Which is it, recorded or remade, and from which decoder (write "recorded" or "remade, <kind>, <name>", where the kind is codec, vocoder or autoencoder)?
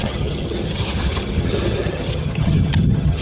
remade, vocoder, HiFi-GAN